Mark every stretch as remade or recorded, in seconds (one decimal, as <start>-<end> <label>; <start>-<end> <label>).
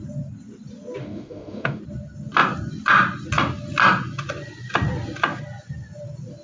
0.0-1.0 recorded; 1.0-1.8 remade; 1.8-6.4 recorded